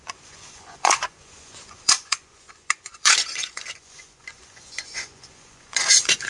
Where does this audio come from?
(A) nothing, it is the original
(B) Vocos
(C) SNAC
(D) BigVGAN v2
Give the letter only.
B